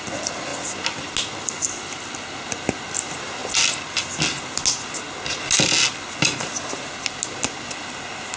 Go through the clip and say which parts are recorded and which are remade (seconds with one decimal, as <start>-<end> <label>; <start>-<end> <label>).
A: 0.0-8.4 recorded